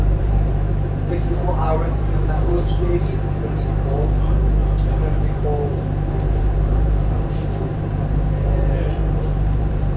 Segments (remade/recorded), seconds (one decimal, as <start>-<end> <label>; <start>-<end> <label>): 0.0-4.6 remade; 4.6-5.1 recorded; 5.1-10.0 remade

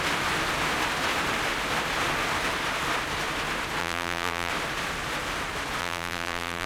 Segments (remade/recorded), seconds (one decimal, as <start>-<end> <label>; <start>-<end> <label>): 0.0-3.8 recorded; 3.8-4.5 remade; 4.5-5.8 recorded; 5.8-6.7 remade

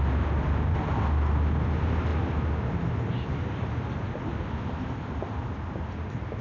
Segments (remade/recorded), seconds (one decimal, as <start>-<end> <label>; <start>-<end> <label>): 0.0-6.4 recorded